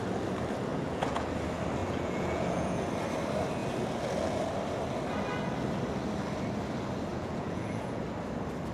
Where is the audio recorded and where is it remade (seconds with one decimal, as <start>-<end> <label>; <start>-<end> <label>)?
0.0-0.7 recorded; 0.7-1.3 remade; 1.3-1.8 recorded; 1.8-2.9 remade; 2.9-7.1 recorded; 7.1-8.0 remade; 8.0-8.7 recorded

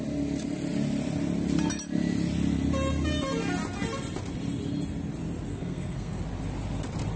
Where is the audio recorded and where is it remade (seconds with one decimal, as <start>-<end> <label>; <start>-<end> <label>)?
0.0-5.5 recorded; 5.5-6.2 remade; 6.2-7.2 recorded

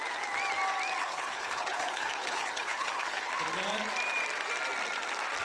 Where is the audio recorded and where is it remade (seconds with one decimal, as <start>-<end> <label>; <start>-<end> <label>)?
0.0-1.0 recorded; 1.0-3.3 remade; 3.3-5.4 recorded

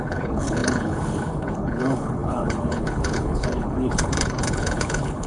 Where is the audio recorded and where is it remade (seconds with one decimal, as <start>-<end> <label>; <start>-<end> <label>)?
0.0-5.3 remade

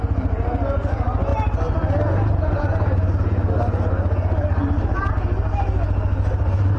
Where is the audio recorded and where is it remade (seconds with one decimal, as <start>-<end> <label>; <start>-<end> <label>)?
0.0-6.8 recorded

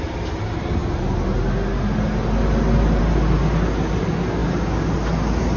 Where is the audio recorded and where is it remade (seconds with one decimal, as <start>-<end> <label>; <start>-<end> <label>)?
0.0-5.6 recorded